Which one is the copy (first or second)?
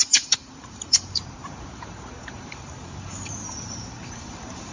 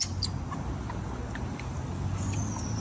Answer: first